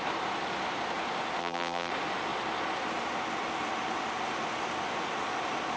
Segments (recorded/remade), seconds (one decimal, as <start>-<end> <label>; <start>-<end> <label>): 0.0-1.4 recorded; 1.4-1.9 remade; 1.9-5.8 recorded